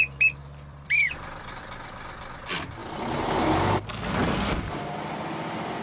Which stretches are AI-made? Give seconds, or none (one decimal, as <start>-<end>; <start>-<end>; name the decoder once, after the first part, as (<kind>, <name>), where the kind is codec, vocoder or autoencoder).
0.4-1.6 (vocoder, BigVGAN v2); 2.8-3.4; 4.2-5.8